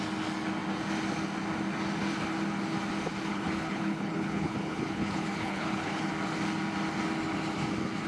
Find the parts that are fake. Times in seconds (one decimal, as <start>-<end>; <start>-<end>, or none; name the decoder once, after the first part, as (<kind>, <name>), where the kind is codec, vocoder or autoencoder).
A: 3.3-6.1 (codec, HILCodec)